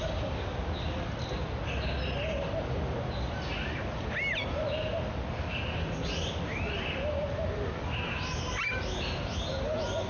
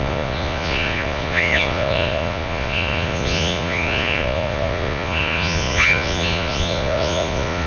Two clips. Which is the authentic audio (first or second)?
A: first